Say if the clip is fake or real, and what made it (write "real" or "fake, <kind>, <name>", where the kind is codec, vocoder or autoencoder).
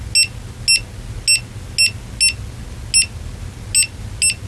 real